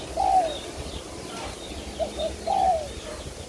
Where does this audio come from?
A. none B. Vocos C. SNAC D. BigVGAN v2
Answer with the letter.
A